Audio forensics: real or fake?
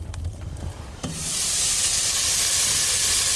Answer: real